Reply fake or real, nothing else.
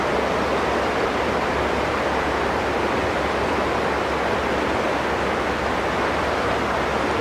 real